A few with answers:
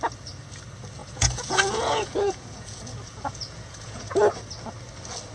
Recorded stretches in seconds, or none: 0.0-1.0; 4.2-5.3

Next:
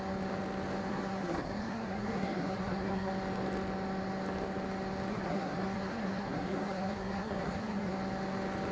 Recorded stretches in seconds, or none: 0.0-0.9; 3.1-5.1; 7.9-8.7

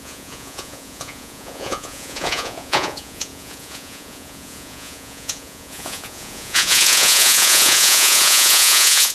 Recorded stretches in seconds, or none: none

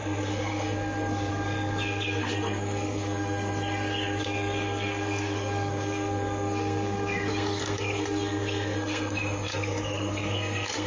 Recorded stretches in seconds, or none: none